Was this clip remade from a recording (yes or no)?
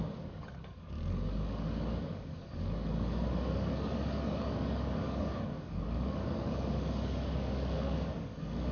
yes